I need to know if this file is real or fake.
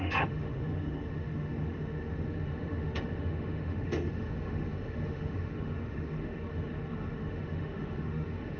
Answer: fake